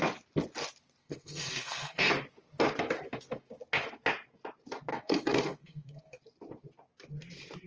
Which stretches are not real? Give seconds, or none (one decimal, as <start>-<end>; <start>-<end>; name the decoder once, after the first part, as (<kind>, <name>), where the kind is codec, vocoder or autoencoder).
1.0-2.1 (codec, SNAC); 4.9-6.2